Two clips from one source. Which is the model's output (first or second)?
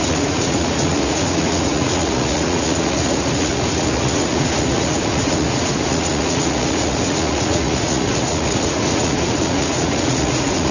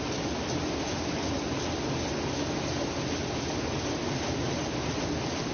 first